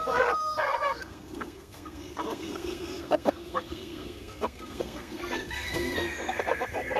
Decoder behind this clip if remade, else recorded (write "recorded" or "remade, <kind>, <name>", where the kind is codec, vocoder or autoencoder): remade, codec, SNAC